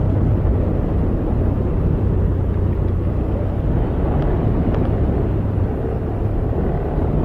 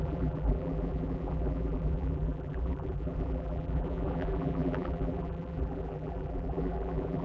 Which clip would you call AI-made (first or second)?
second